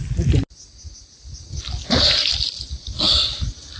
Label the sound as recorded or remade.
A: recorded